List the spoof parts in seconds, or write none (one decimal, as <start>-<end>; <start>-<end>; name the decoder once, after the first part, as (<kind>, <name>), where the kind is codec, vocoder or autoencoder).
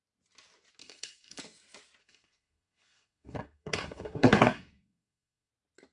0.8-1.4 (codec, SNAC); 2.0-5.5